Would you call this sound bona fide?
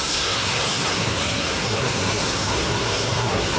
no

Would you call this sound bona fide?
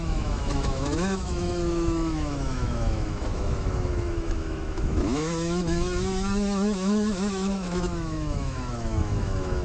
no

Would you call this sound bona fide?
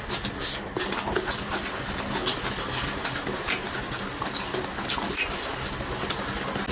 yes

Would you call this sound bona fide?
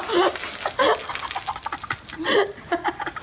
yes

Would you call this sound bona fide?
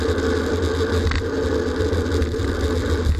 yes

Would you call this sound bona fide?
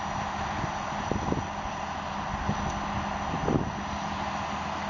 yes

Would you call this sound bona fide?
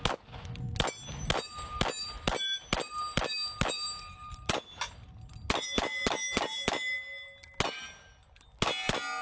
yes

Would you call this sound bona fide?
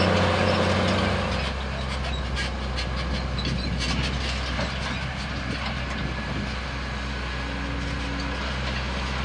yes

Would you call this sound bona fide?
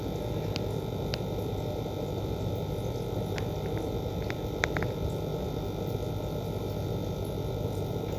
yes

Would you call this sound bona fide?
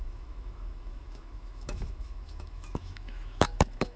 no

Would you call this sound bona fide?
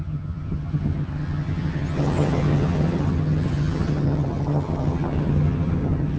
no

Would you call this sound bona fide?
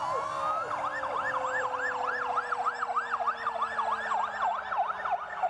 yes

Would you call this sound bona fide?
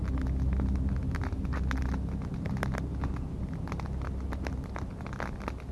yes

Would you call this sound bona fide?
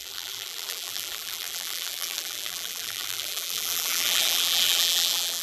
no